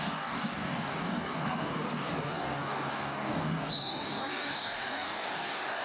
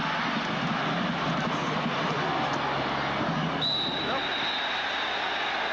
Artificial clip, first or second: first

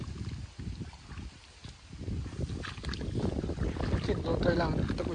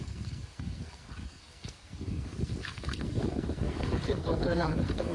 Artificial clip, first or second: second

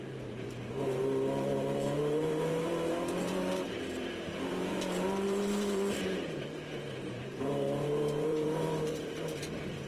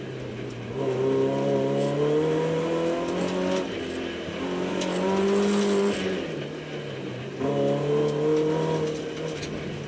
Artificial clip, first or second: first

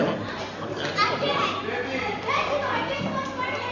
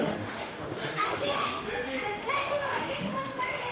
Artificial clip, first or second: second